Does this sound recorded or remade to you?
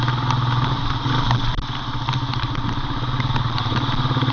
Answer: recorded